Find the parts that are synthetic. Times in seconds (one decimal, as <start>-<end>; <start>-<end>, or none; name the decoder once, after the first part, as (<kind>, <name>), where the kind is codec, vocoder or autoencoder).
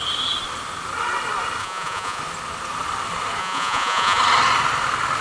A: 1.6-2.2 (vocoder, Vocos); 3.4-4.2